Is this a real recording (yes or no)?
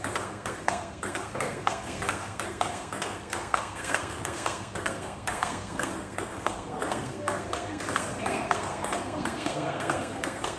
no